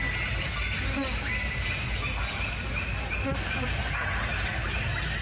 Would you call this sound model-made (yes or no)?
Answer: no